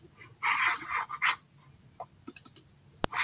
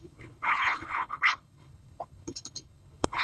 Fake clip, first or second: second